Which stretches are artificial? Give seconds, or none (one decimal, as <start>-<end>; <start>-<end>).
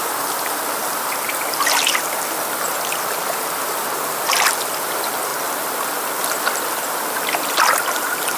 none